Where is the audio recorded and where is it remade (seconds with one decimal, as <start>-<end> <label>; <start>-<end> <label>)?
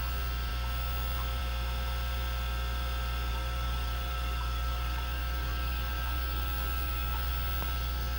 0.0-3.3 recorded; 3.3-7.3 remade; 7.3-8.2 recorded